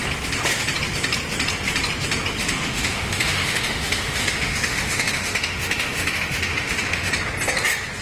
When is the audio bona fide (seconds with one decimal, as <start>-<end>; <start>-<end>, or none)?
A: 0.0-2.4; 7.1-8.0

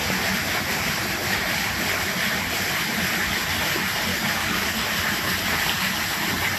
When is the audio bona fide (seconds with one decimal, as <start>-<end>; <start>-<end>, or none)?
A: 0.0-4.1; 4.7-6.6

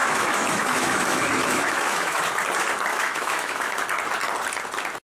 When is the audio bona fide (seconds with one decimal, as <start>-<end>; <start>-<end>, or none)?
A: 2.2-2.9; 3.8-5.2

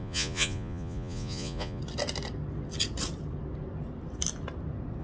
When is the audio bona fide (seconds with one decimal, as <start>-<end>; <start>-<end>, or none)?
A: 1.8-5.0